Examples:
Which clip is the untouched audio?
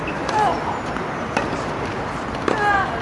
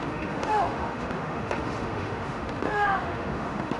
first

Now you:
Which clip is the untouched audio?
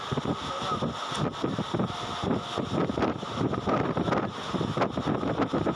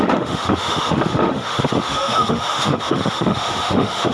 first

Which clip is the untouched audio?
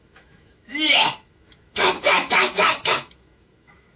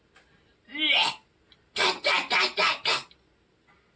second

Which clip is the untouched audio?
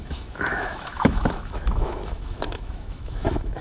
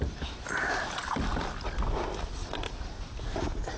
second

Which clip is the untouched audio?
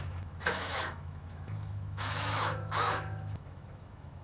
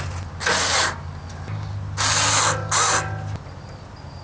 second